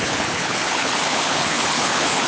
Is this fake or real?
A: fake